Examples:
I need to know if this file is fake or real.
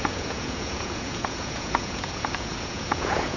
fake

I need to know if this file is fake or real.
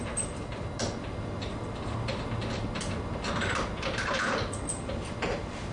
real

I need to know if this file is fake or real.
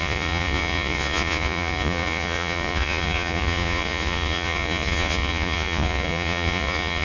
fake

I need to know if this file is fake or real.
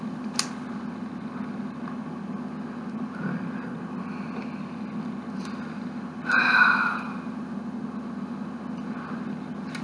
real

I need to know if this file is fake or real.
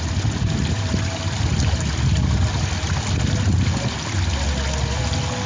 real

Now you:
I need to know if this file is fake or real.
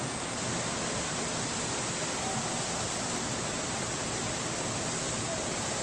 real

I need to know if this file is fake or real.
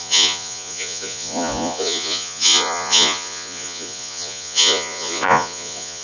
fake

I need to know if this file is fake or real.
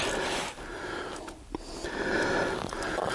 real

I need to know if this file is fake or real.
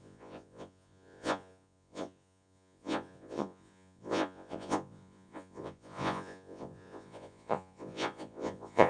fake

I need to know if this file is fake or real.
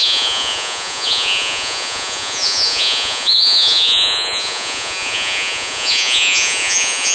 fake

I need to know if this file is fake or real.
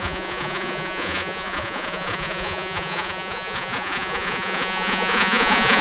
fake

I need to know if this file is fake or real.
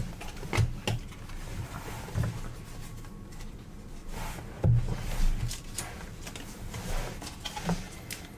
real